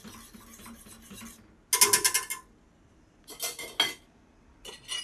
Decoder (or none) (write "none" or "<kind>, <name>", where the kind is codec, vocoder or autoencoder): none